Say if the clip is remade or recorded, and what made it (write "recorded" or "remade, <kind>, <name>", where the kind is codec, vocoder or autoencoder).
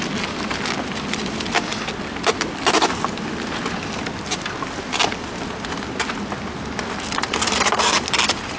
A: recorded